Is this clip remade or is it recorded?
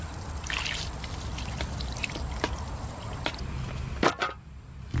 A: recorded